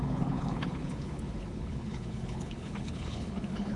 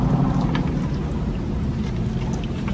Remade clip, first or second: first